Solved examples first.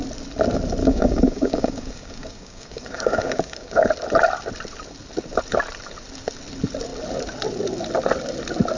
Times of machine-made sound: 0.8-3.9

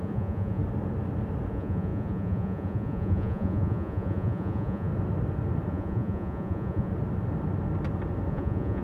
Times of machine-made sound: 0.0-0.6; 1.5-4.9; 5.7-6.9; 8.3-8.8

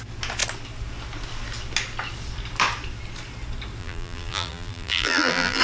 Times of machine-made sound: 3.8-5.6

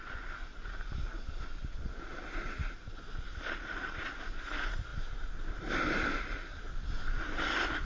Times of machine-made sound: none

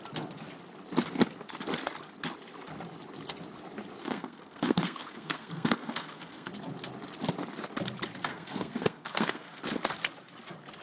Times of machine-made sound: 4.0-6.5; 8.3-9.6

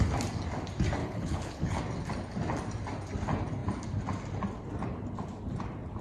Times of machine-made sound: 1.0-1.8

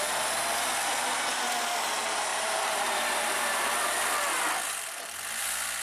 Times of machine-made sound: 2.3-3.7